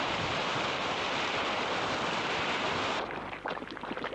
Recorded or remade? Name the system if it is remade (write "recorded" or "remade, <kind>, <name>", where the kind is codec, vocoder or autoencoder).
recorded